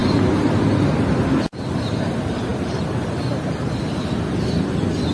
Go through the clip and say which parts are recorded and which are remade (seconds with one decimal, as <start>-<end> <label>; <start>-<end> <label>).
0.0-2.5 recorded; 2.5-3.4 remade; 3.4-5.1 recorded